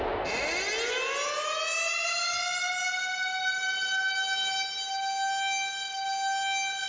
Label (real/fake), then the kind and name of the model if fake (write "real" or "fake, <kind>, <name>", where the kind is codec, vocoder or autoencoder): real